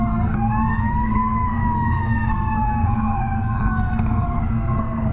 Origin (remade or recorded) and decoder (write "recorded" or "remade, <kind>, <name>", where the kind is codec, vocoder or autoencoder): remade, codec, SNAC